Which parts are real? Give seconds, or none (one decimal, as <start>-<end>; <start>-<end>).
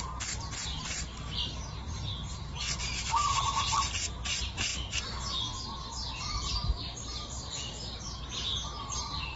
0.0-9.4